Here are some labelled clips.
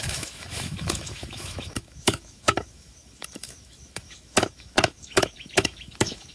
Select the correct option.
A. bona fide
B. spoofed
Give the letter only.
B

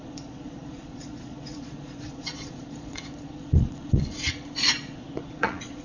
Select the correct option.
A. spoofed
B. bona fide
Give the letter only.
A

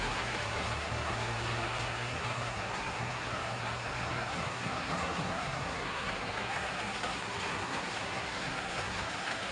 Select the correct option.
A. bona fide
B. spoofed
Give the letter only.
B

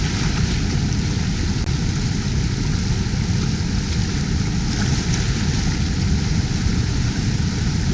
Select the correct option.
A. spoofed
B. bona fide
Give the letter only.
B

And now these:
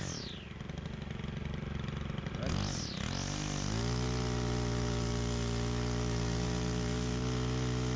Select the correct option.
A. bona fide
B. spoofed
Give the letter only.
A